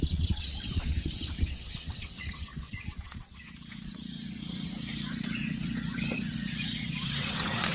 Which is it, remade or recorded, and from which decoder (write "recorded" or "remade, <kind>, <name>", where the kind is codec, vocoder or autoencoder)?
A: remade, vocoder, WaveNeXt